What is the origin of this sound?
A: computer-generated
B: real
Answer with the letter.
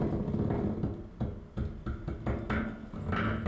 B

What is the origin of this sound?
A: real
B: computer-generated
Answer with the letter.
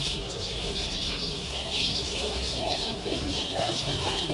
B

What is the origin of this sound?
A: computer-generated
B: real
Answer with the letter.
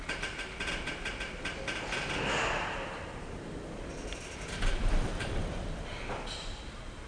A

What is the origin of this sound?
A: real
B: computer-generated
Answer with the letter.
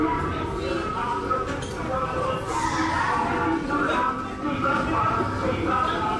A